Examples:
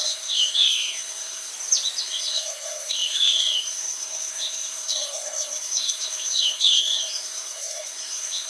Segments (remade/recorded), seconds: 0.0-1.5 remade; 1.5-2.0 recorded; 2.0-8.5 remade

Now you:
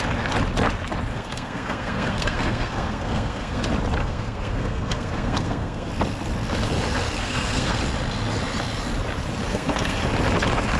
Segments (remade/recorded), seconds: 0.0-1.1 recorded; 1.1-3.6 remade; 3.6-4.0 recorded; 4.0-5.9 remade; 5.9-7.2 recorded; 7.2-7.8 remade; 7.8-9.5 recorded; 9.5-10.0 remade; 10.0-10.8 recorded

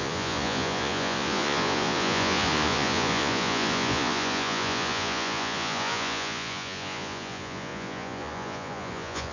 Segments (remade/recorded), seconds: 0.0-9.3 remade